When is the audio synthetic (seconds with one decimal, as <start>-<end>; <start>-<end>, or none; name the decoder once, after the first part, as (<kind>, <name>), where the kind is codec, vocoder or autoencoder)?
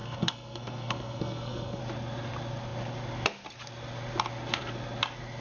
0.0-1.8 (codec, SNAC)